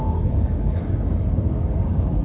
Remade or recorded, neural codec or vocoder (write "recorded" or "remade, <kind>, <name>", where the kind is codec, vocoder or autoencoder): remade, codec, DAC